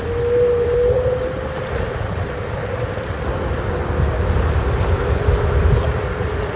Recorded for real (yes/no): yes